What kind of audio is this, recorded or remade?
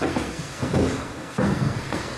remade